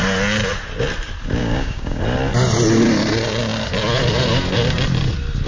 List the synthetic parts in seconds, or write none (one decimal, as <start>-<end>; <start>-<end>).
1.4-2.0